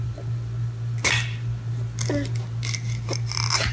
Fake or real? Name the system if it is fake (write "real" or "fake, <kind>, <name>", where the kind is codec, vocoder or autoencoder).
real